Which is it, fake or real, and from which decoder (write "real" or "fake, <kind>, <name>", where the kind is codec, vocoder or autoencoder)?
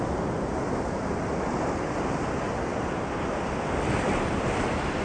real